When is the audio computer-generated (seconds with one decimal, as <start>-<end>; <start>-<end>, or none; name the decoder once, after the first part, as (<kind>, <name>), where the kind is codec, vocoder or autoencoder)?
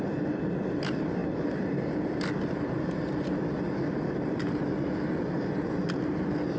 none